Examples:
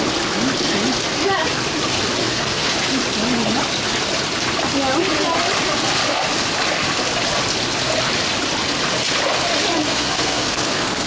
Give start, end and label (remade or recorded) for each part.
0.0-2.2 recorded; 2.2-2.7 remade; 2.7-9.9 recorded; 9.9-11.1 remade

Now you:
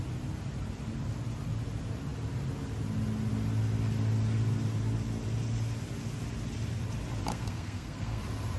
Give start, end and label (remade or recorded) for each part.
0.0-7.3 recorded; 7.3-8.2 remade; 8.2-8.6 recorded

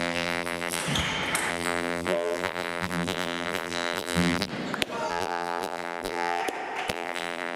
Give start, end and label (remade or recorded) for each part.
0.0-0.8 remade; 0.8-1.5 recorded; 1.5-4.5 remade; 4.5-5.1 recorded; 5.1-6.4 remade; 6.4-6.9 recorded; 6.9-7.6 remade